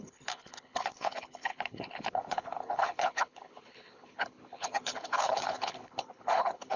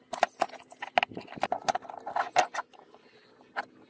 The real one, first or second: second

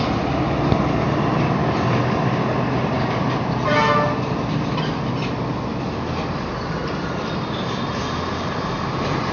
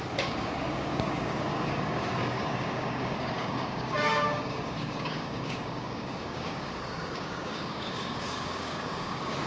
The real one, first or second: first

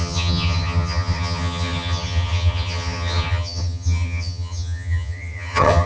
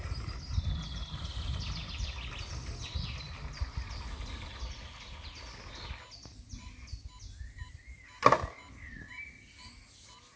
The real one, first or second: second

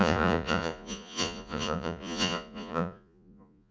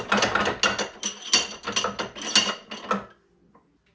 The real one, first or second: second